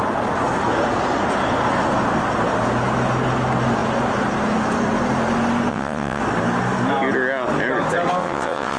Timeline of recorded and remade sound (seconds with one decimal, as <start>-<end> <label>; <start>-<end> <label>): 0.0-5.7 recorded; 5.7-6.2 remade; 6.2-8.2 recorded; 8.2-8.8 remade